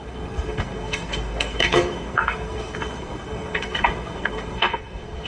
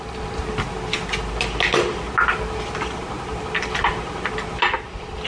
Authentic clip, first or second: second